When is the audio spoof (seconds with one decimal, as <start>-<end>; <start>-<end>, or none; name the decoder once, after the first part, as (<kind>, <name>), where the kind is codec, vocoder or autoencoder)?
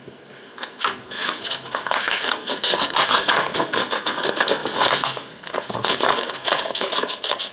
0.0-7.5 (codec, SNAC)